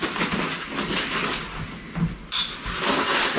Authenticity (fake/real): real